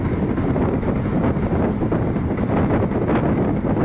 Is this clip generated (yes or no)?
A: no